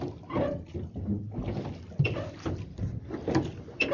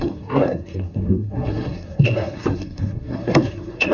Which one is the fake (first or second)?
second